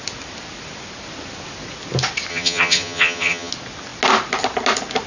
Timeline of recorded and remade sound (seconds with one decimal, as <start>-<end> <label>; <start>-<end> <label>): 0.0-2.3 recorded; 2.3-3.5 remade; 3.5-5.1 recorded